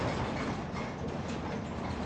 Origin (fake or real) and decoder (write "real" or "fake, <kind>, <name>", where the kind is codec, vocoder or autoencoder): real